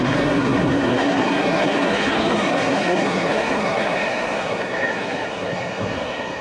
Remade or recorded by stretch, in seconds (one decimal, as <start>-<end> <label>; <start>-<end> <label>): 0.0-6.4 remade